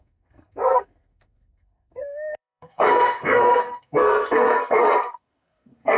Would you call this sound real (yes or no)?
no